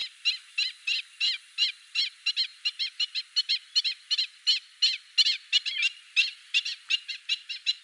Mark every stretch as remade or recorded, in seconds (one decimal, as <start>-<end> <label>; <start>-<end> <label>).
0.0-7.8 recorded